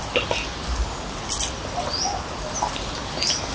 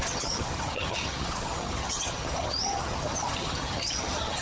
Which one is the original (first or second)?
first